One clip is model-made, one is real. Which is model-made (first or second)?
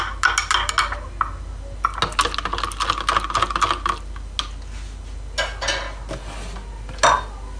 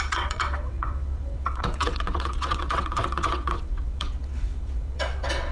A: second